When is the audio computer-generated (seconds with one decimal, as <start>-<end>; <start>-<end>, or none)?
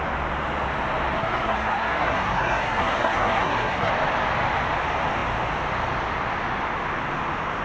1.2-3.9